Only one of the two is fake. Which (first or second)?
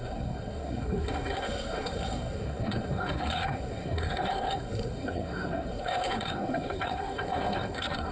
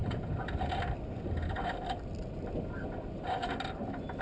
first